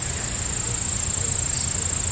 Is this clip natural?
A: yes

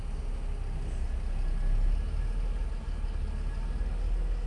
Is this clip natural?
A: yes